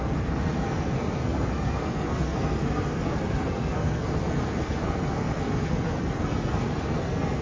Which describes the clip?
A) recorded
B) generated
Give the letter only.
B